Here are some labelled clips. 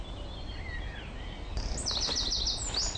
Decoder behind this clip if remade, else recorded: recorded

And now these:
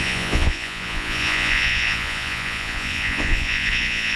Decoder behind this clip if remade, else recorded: remade, vocoder, Vocos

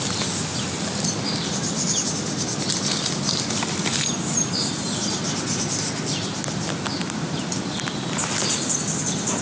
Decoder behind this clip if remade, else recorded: recorded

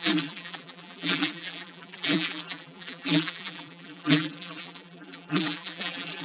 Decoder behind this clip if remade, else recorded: remade, vocoder, BigVGAN v2